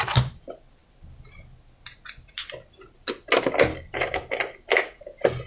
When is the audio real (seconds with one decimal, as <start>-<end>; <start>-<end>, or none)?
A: 0.0-5.5